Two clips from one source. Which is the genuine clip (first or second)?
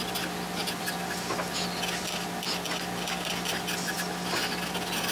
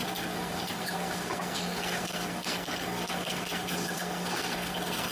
first